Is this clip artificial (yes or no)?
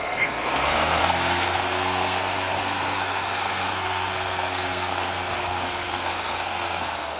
yes